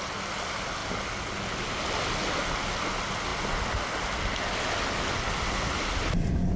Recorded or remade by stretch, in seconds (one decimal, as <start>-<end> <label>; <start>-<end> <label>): 0.0-6.6 recorded